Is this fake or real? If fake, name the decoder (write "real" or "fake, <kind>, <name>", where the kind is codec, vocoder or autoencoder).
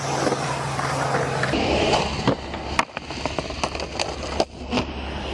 real